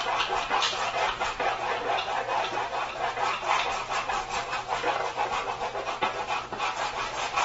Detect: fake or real real